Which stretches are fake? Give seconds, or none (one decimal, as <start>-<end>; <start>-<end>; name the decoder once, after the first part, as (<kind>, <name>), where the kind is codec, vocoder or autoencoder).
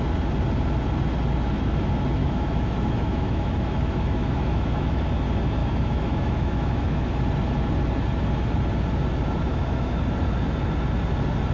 2.2-5.0 (autoencoder, DAC-VAE); 5.6-7.2; 9.5-10.0